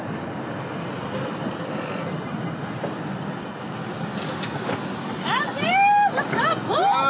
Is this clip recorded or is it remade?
recorded